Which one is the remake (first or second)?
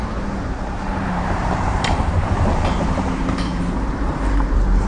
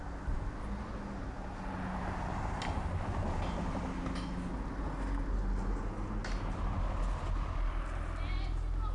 first